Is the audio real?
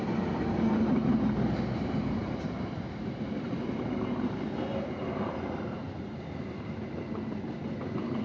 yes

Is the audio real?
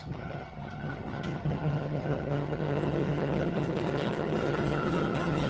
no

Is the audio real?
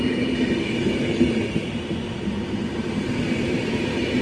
yes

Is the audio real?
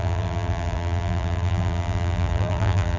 no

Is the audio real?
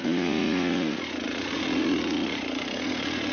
no